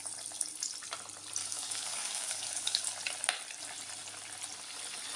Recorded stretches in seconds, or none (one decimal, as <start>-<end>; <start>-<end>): 0.0-1.4; 2.8-5.2